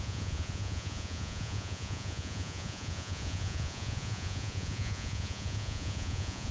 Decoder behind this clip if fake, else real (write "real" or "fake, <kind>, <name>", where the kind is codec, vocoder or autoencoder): fake, vocoder, Vocos